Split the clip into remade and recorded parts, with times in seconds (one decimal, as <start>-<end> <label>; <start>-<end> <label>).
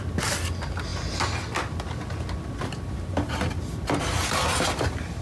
0.0-5.2 recorded